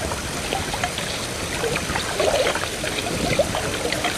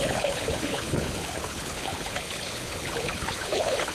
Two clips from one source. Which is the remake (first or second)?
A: second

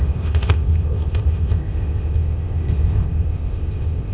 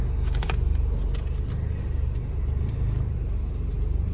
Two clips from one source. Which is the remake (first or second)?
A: first